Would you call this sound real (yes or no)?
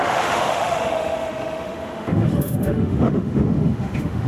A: no